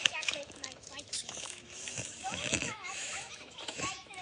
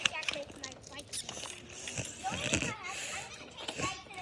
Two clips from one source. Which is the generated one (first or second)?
first